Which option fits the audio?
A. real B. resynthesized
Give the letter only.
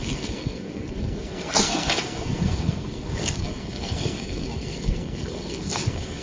B